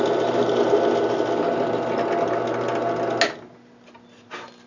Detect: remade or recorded recorded